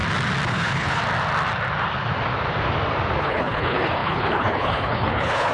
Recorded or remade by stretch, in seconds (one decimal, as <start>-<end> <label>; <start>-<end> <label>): 0.0-0.5 recorded; 0.5-1.0 remade; 1.0-3.2 recorded; 3.2-5.5 remade